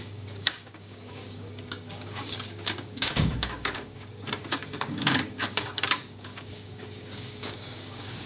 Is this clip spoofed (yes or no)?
yes